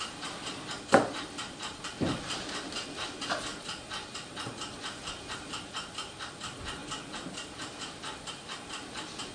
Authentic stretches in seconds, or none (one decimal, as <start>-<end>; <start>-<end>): 6.8-7.8